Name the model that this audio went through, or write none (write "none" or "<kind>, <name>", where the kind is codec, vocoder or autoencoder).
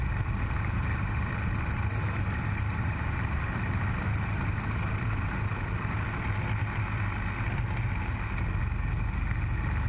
none